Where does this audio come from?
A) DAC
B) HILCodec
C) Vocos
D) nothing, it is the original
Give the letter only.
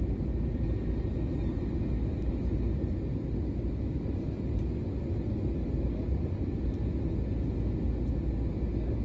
D